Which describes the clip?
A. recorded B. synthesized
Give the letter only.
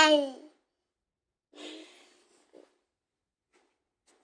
A